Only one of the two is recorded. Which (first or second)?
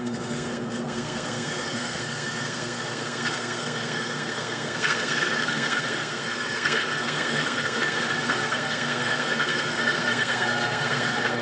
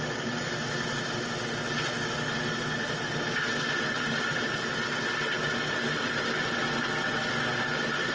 second